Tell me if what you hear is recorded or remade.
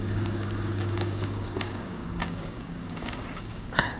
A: remade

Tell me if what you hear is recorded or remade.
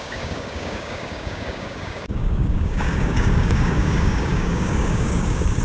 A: remade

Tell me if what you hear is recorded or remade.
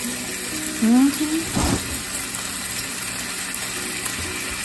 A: recorded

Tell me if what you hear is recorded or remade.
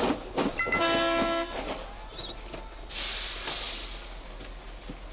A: recorded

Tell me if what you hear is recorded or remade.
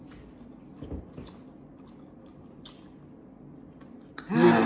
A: recorded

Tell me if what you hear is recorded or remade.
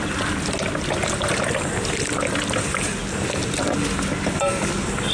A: recorded